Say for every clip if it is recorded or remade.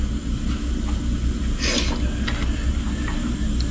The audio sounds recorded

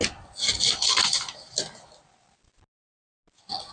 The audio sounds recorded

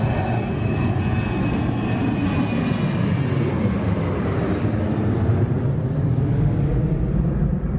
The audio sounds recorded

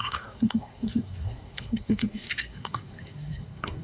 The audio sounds remade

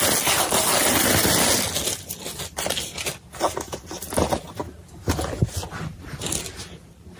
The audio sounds recorded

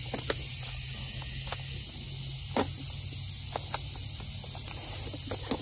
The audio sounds recorded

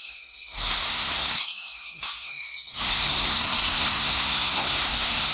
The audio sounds remade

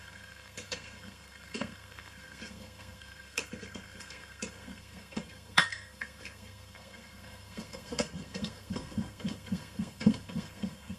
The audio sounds remade